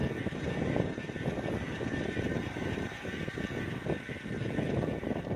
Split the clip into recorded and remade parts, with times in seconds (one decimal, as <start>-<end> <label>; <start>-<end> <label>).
0.0-5.4 recorded